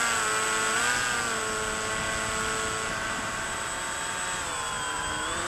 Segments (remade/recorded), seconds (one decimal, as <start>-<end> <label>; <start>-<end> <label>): 0.0-2.9 recorded; 2.9-5.5 remade